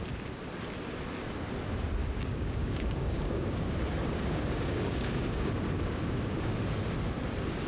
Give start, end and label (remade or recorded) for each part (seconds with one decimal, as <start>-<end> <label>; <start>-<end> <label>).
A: 0.0-2.0 recorded; 2.0-6.6 remade; 6.6-7.7 recorded